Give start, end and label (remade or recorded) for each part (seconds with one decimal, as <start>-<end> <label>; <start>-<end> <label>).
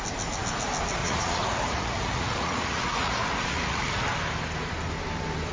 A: 0.0-1.0 recorded; 1.0-4.0 remade; 4.0-5.5 recorded